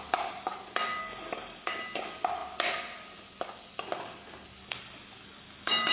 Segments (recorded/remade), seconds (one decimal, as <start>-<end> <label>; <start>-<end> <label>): 0.0-1.0 recorded; 1.0-1.8 remade; 1.8-4.6 recorded; 4.6-5.9 remade